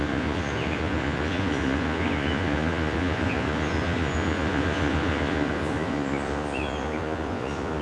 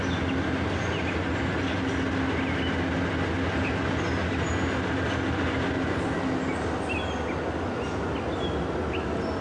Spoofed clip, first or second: first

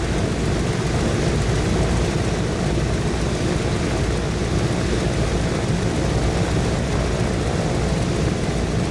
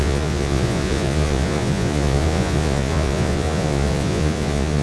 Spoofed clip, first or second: second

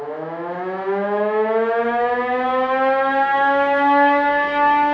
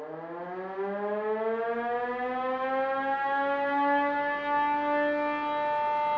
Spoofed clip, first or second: first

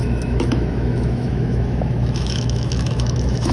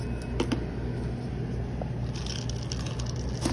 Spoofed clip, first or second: first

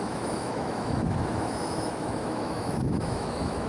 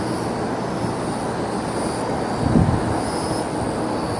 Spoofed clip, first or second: first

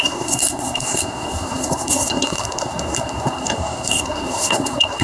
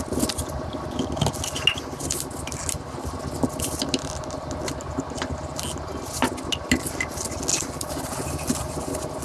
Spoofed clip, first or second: first